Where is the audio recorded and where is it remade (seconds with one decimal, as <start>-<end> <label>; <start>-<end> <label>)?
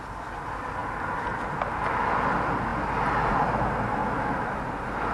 0.0-5.1 recorded